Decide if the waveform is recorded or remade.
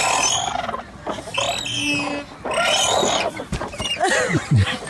recorded